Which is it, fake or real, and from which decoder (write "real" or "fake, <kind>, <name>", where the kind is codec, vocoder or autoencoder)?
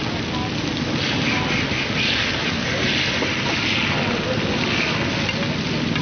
real